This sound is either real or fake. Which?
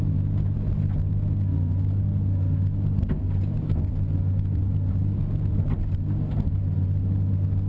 real